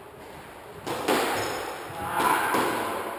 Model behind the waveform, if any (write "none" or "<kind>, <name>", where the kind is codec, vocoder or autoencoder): none